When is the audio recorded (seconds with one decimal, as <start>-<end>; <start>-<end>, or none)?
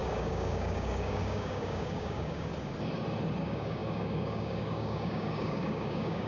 2.5-3.4